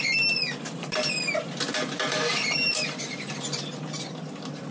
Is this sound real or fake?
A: real